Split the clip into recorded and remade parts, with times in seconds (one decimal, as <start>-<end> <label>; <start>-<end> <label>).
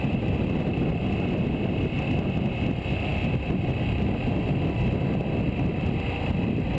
0.0-6.8 recorded